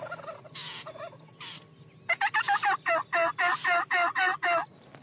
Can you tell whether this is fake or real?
real